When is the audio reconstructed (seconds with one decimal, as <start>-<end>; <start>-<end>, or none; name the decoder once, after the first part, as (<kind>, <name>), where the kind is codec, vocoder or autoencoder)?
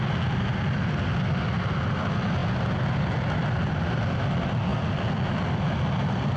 none